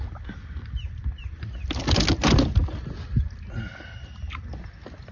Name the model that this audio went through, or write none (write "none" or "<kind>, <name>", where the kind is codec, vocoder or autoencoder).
none